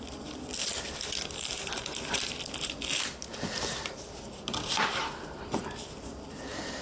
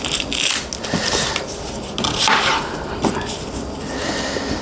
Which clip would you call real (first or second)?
second